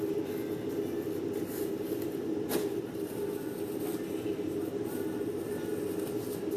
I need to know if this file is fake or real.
real